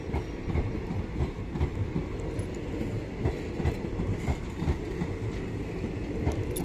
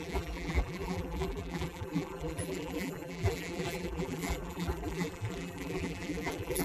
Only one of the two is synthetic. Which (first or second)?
second